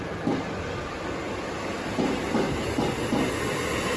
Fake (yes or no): no